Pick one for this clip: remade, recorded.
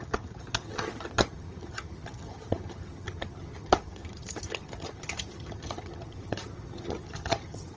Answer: remade